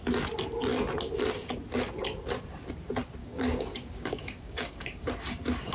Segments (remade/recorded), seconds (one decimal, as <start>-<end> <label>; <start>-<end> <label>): 0.0-3.2 recorded; 3.2-5.1 remade; 5.1-5.7 recorded